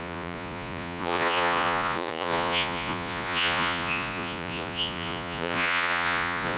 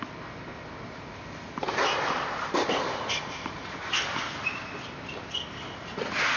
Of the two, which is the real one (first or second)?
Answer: second